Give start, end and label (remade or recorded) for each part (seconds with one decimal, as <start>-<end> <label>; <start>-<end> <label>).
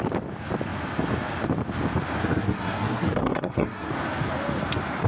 0.0-2.2 recorded; 2.2-3.9 remade; 3.9-5.1 recorded